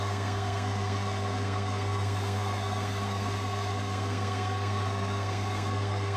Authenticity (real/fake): fake